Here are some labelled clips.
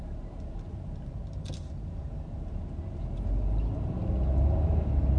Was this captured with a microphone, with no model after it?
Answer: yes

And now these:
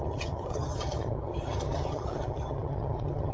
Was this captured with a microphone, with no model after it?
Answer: no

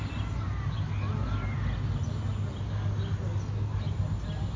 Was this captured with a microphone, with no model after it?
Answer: yes